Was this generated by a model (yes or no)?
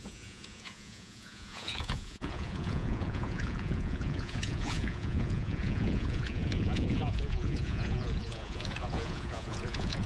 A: yes